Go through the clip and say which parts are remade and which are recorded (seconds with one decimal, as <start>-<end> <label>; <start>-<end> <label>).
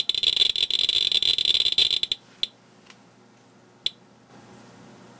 0.0-4.3 recorded; 4.3-5.2 remade